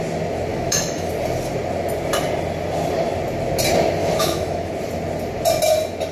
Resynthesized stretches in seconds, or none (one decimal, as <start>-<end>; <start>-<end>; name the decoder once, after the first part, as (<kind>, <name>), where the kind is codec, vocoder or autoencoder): 0.5-1.1 (autoencoder, DAC-VAE); 4.0-4.7